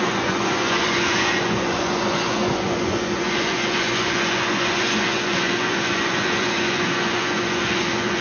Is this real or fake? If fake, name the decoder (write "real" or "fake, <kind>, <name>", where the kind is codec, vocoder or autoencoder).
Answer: fake, vocoder, Vocos